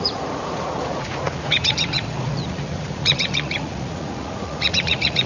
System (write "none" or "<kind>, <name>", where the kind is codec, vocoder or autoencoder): vocoder, Vocos